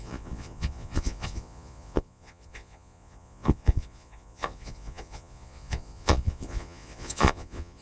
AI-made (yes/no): yes